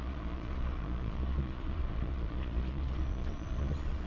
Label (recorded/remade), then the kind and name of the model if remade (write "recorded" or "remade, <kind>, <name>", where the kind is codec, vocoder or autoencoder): remade, vocoder, Vocos